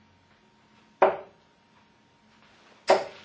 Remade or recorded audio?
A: recorded